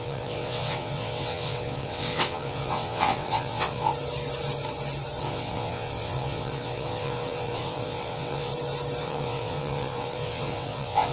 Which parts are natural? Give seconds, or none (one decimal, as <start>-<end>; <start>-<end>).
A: 3.9-5.2; 8.5-9.0